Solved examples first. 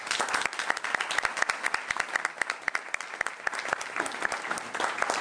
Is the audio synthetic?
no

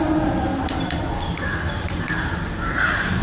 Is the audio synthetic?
yes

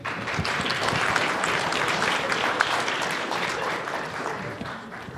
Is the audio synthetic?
yes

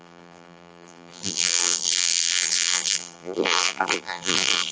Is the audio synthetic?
yes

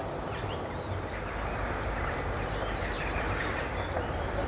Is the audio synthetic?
yes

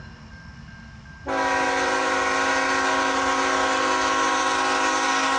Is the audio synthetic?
no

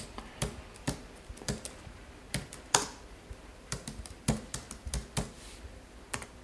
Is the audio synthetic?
yes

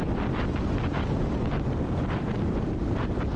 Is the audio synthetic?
no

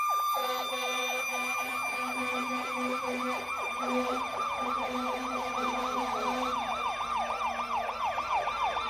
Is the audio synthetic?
yes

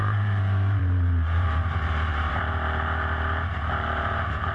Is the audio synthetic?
yes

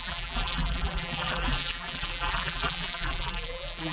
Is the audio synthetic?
yes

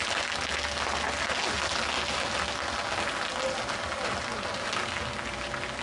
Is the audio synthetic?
no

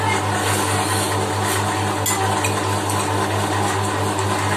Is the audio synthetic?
no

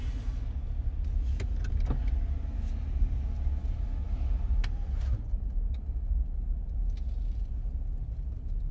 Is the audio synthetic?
no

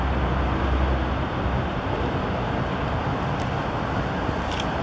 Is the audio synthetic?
no